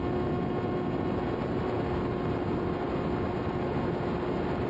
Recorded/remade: recorded